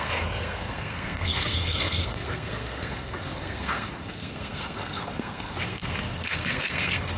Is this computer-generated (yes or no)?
yes